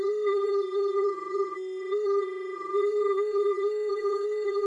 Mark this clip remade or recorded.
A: remade